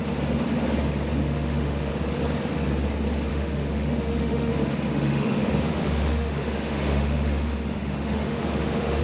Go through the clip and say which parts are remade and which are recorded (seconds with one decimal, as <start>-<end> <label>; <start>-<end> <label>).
0.0-1.2 recorded; 1.2-1.9 remade; 1.9-3.3 recorded; 3.3-4.5 remade; 4.5-4.9 recorded; 4.9-9.0 remade